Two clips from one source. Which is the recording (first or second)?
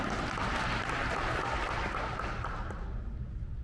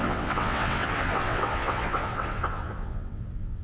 first